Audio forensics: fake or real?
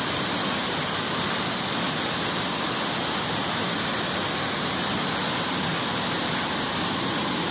real